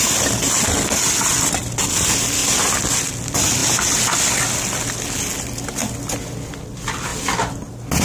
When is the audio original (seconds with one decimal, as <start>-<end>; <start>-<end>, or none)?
0.0-8.0